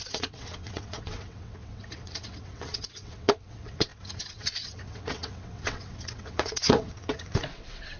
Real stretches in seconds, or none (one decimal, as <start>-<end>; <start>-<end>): none